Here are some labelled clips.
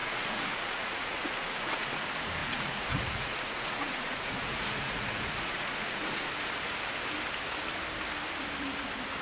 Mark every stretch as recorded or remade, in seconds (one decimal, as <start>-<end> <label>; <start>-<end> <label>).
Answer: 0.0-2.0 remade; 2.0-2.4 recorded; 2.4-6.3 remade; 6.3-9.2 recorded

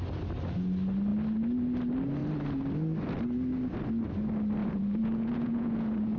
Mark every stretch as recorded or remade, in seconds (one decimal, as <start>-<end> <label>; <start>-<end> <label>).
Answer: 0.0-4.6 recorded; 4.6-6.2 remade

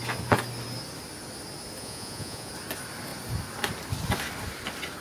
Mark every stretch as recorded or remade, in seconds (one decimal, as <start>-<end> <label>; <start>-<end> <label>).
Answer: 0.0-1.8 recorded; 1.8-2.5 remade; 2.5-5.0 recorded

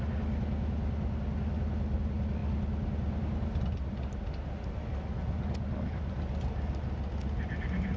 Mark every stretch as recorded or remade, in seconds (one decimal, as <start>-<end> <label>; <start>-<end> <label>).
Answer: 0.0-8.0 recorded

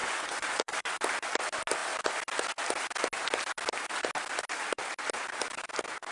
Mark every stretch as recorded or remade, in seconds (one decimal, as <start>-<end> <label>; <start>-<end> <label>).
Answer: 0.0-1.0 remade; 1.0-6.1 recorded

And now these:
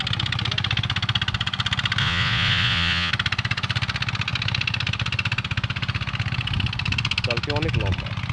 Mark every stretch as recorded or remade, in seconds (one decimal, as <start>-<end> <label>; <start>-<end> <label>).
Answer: 0.0-2.0 recorded; 2.0-3.1 remade; 3.1-8.3 recorded

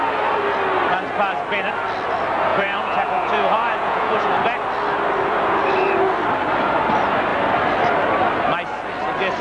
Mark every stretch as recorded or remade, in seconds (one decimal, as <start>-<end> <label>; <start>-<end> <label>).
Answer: 0.0-2.5 recorded; 2.5-4.3 remade; 4.3-9.4 recorded